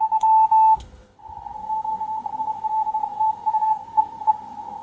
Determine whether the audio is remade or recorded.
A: remade